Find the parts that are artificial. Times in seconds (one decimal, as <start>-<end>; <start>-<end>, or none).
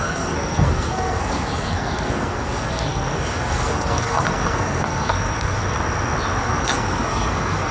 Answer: 0.0-5.6; 6.4-7.7